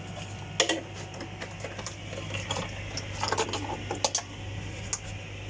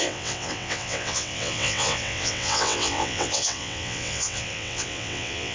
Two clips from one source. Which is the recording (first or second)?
first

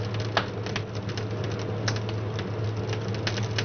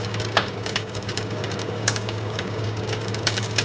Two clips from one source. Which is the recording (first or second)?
first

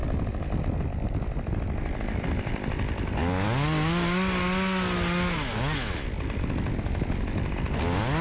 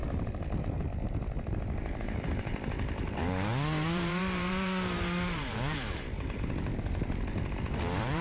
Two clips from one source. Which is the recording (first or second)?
first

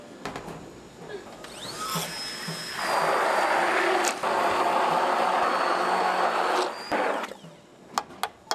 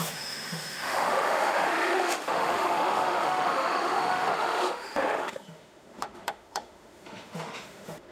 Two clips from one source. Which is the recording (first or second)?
first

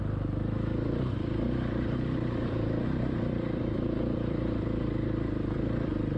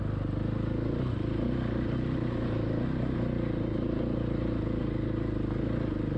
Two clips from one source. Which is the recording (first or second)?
second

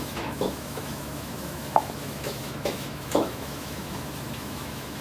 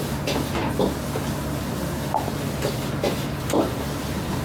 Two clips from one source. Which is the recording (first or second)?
second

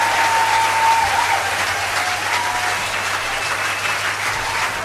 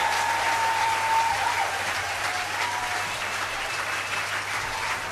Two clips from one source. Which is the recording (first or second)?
first